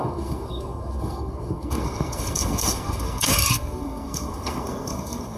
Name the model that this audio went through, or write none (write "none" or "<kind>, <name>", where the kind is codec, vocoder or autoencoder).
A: codec, SNAC